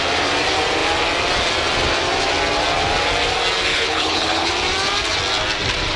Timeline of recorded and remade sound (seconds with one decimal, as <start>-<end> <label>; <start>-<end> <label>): 0.0-3.7 recorded; 3.7-4.5 remade; 4.5-6.0 recorded